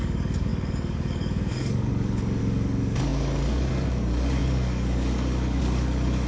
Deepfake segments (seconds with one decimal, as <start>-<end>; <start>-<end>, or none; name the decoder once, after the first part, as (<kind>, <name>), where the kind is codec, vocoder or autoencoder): 0.0-6.3 (codec, DAC)